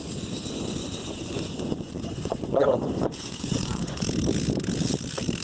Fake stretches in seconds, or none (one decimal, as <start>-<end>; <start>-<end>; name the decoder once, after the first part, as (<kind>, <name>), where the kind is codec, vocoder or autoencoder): 0.8-4.0 (vocoder, Vocos)